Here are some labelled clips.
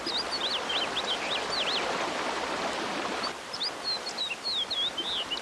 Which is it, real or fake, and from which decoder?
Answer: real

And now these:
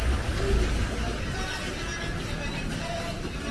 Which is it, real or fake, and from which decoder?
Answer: real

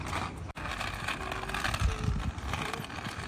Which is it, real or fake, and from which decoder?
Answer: real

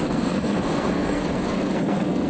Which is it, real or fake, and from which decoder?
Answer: fake, codec, SNAC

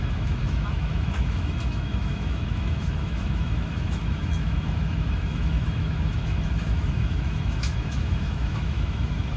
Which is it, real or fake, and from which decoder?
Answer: fake, autoencoder, DAC-VAE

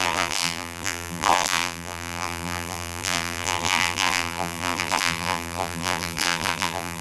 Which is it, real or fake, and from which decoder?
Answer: fake, vocoder, BigVGAN v2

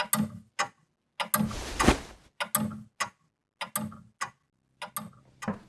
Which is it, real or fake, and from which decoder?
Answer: real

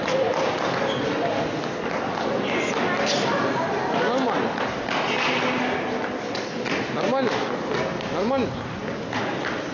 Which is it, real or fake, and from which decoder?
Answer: real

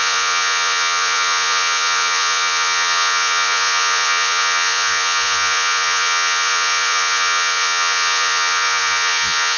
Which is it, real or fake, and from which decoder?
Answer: fake, vocoder, Vocos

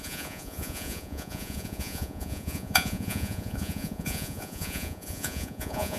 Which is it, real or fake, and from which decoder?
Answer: fake, vocoder, Vocos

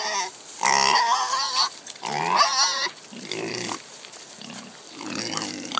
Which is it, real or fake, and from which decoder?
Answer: real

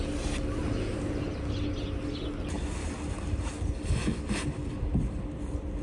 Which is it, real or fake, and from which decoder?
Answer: real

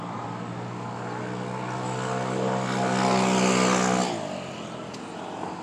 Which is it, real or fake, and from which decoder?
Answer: real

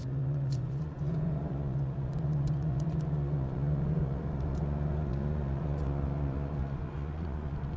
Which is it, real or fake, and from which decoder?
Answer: fake, vocoder, Vocos